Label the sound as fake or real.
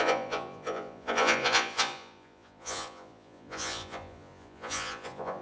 fake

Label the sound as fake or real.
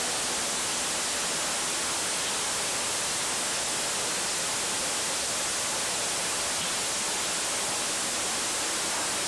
real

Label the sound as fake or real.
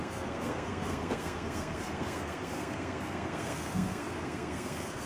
fake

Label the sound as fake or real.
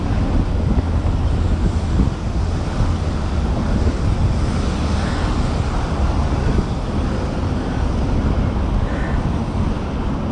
real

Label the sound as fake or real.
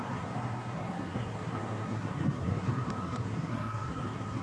fake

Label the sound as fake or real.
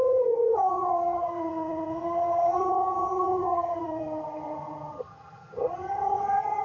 fake